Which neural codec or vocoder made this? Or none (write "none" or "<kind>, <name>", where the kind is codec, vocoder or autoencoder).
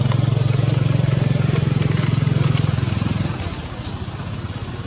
none